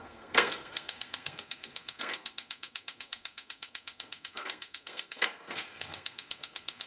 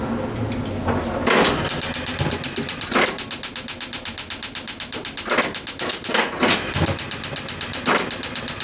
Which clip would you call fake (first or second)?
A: first